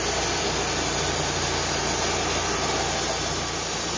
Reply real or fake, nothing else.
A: real